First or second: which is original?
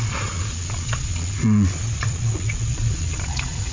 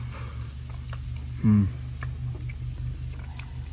second